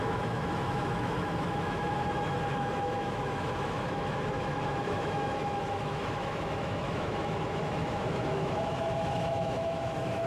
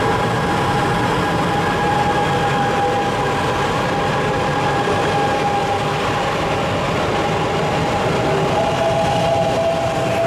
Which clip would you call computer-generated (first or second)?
first